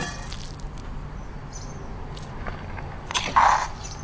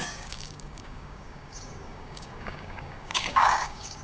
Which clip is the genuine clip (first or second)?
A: first